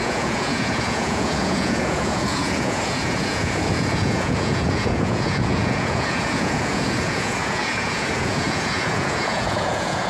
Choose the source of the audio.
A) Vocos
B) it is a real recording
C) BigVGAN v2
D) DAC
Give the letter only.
A